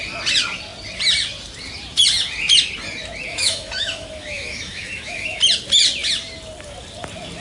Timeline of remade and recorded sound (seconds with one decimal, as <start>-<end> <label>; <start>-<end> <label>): 0.0-3.3 recorded; 3.3-5.4 remade; 5.4-7.4 recorded